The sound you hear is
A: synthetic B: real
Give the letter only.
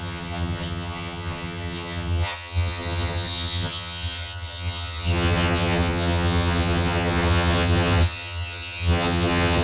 A